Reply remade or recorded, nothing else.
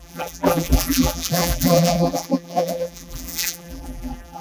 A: remade